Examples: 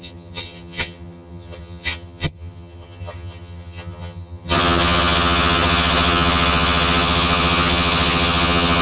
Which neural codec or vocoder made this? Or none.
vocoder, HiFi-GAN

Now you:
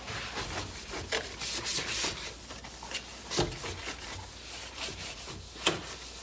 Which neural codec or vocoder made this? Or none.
none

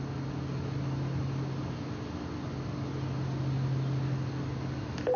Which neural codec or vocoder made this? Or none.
none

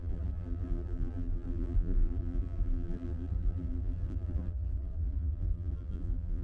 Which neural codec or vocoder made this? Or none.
vocoder, BigVGAN v2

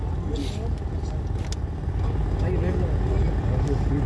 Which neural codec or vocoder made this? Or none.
none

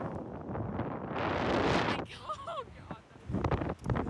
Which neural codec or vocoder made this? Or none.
none